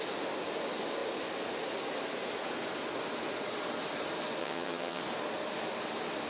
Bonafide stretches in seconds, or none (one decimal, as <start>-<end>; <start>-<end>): 0.0-4.4; 5.0-6.3